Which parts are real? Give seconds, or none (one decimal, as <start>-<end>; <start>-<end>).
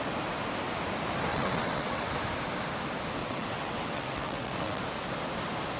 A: 0.0-1.3; 2.1-3.2; 4.8-5.8